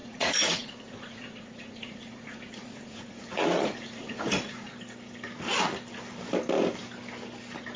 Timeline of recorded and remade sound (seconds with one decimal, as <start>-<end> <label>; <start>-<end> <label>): 0.0-4.7 remade; 4.7-7.8 recorded